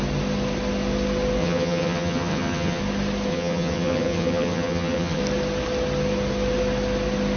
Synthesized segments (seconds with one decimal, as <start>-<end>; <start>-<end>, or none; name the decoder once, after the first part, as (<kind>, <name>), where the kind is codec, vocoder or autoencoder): 1.4-2.8 (vocoder, HiFi-GAN); 3.3-5.2